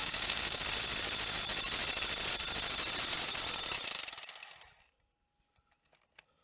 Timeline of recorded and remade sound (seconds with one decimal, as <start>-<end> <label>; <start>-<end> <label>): 0.0-0.6 remade; 0.6-6.4 recorded